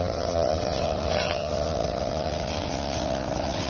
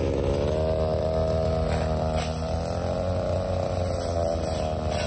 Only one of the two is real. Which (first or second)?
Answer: second